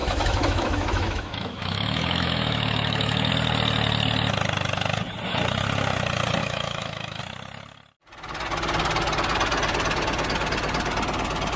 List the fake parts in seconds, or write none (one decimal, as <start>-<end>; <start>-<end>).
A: 0.0-3.3; 6.4-7.2